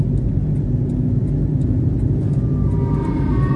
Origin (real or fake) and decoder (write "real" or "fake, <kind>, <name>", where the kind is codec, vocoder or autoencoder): real